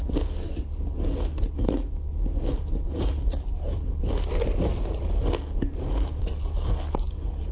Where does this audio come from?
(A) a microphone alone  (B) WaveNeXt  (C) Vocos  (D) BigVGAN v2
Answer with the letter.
A